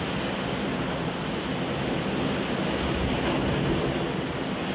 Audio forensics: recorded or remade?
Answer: recorded